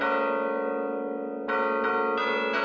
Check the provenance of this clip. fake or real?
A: real